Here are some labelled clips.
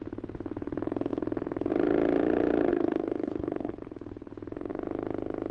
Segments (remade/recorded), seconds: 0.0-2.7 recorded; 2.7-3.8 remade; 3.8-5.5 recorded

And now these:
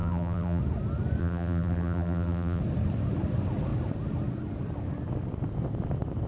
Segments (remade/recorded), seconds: 0.0-0.6 remade; 0.6-1.2 recorded; 1.2-2.6 remade; 2.6-6.3 recorded

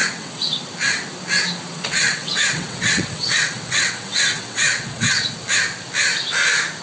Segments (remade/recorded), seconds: 0.0-0.6 remade; 0.6-1.7 recorded; 1.7-5.2 remade; 5.2-6.8 recorded

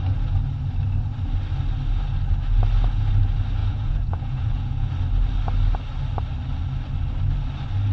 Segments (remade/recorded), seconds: 0.0-3.6 recorded; 3.6-4.9 remade; 4.9-7.9 recorded

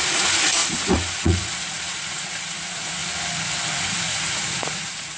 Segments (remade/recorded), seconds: 0.0-3.0 remade; 3.0-3.8 recorded; 3.8-5.2 remade

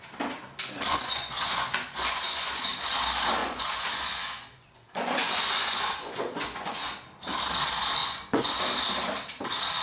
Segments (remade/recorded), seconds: 0.0-0.9 recorded; 0.9-2.6 remade; 2.6-3.4 recorded; 3.4-6.9 remade; 6.9-8.0 recorded; 8.0-8.6 remade; 8.6-9.8 recorded